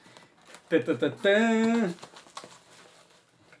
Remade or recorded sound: recorded